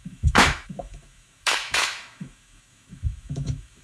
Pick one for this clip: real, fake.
fake